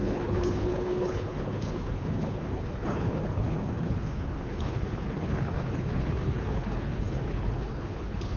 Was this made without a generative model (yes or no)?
no